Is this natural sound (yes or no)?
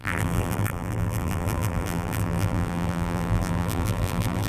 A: no